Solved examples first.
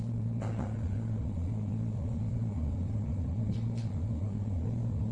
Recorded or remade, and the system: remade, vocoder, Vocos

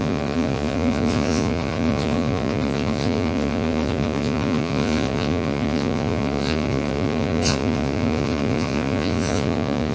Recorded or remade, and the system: remade, vocoder, Vocos